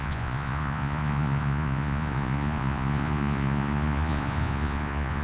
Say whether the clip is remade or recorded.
remade